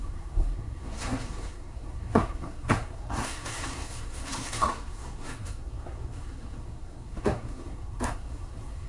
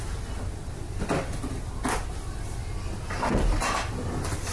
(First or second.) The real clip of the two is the second